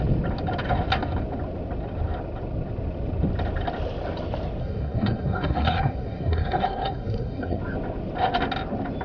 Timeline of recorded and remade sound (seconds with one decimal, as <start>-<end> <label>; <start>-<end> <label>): 0.0-4.6 recorded; 4.6-7.6 remade; 7.6-9.0 recorded